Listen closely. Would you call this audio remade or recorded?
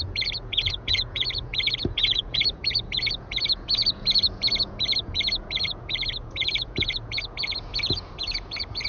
remade